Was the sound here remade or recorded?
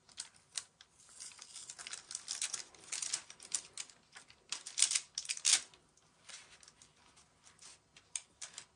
recorded